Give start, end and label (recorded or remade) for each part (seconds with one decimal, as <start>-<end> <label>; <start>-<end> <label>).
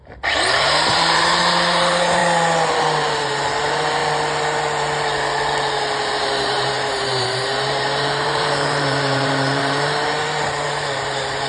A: 0.0-2.2 remade; 2.2-2.8 recorded; 2.8-4.0 remade; 4.0-6.1 recorded; 6.1-11.5 remade